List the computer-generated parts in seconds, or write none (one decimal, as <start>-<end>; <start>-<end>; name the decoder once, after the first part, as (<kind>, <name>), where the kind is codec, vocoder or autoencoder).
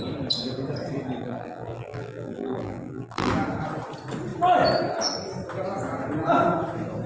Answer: 1.2-3.3 (vocoder, BigVGAN v2)